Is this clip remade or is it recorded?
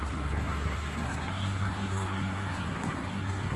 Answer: remade